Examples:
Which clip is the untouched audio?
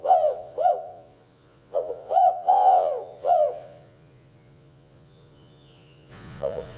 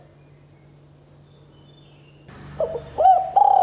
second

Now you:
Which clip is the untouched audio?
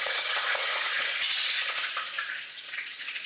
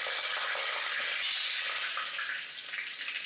second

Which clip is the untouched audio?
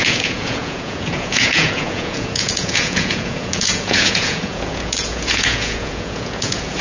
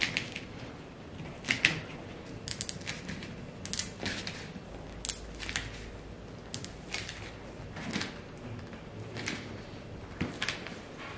second